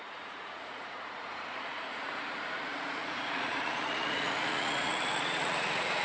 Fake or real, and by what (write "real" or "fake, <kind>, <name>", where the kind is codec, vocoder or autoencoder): fake, vocoder, Vocos